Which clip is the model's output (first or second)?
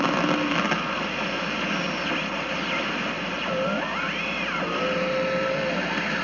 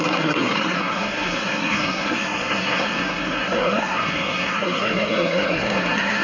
second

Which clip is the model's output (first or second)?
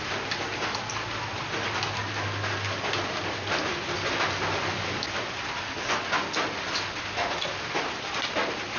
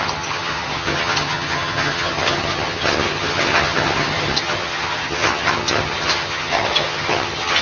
second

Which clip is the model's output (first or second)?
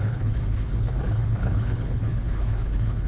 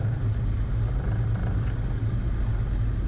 first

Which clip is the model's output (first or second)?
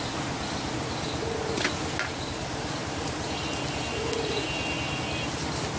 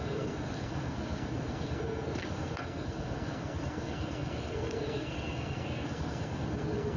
second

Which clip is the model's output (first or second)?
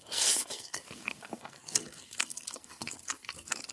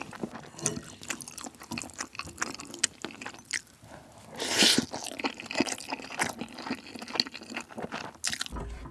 first